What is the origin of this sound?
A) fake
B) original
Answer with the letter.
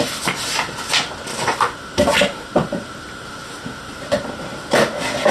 B